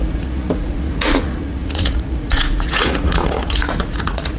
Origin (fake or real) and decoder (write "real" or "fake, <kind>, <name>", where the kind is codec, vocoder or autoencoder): fake, vocoder, Vocos